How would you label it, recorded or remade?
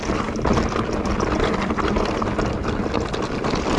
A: recorded